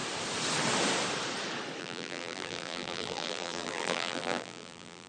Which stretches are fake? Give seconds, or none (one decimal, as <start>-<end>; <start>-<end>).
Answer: 1.8-5.1